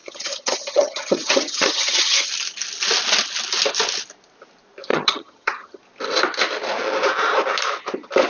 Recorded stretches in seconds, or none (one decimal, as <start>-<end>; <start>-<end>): 2.3-4.9; 5.8-8.3